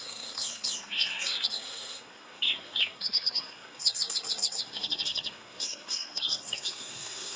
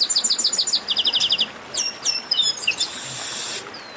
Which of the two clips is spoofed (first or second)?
first